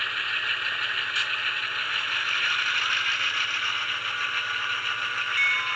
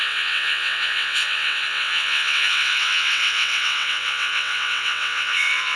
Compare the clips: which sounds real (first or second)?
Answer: first